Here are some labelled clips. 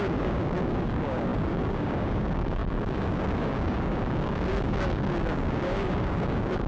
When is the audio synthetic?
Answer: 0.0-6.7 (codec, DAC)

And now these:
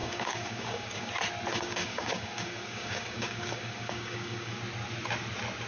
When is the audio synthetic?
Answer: 0.0-1.1 (codec, DAC); 1.5-4.6

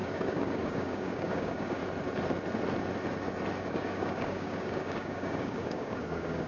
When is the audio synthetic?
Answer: 0.0-1.8 (codec, DAC); 3.7-6.5

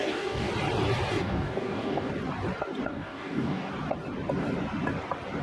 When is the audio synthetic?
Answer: 0.0-0.5 (codec, DAC); 1.2-2.1; 2.9-3.7

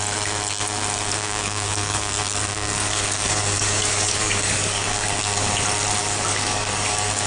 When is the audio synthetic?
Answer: 1.2-5.5 (codec, DAC); 6.0-7.3